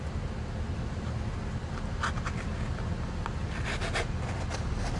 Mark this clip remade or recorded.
recorded